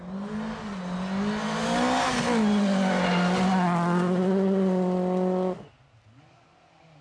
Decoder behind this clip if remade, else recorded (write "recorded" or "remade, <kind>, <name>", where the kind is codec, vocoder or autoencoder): recorded